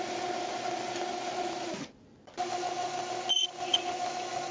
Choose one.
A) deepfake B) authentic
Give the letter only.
B